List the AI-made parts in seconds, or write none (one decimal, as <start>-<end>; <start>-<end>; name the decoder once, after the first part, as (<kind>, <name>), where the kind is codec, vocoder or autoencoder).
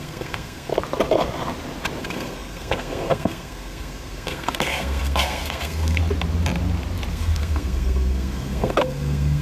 0.0-0.7 (codec, SNAC); 2.0-6.0; 7.1-9.4